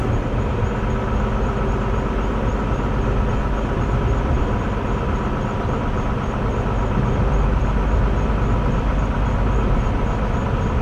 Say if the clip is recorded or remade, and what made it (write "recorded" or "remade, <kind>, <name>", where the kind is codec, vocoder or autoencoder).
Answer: recorded